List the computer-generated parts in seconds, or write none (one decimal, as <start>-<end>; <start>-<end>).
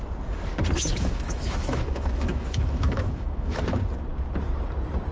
0.9-3.6